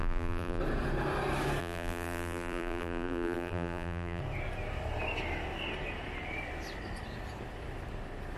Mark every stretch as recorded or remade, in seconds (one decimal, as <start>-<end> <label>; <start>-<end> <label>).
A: 0.0-0.6 remade; 0.6-1.6 recorded; 1.6-4.2 remade; 4.2-8.4 recorded